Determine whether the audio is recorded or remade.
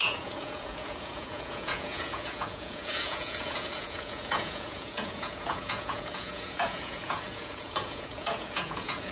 remade